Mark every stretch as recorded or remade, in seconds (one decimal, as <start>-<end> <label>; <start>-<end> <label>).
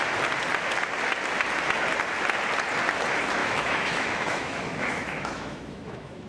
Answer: 0.0-3.4 recorded; 3.4-6.3 remade